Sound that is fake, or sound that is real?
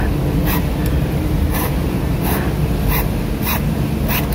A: real